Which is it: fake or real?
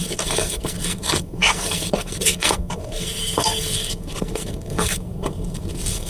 fake